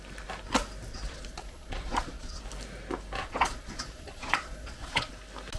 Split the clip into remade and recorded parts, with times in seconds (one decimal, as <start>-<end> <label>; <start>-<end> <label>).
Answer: 0.0-0.9 recorded; 0.9-2.4 remade; 2.4-3.2 recorded; 3.2-5.1 remade; 5.1-5.6 recorded